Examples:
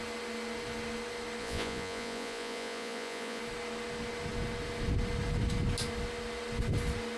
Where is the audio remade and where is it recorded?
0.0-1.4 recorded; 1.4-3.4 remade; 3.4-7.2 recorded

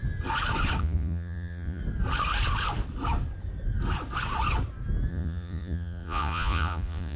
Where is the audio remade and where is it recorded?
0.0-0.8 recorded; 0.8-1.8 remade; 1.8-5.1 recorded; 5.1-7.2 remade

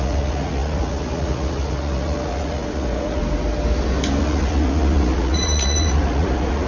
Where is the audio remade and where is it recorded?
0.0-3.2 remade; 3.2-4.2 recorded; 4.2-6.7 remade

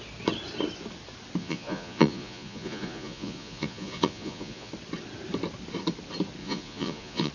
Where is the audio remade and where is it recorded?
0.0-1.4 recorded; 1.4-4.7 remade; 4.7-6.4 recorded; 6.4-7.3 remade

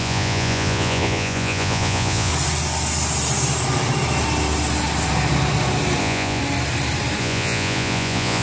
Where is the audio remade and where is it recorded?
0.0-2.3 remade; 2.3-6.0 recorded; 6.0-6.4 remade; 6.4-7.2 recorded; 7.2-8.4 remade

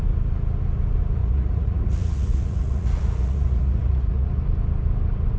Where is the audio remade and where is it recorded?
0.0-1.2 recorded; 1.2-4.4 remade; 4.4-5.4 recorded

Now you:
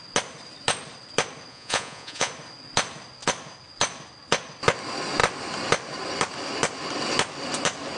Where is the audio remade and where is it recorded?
0.0-1.5 recorded; 1.5-2.3 remade; 2.3-8.0 recorded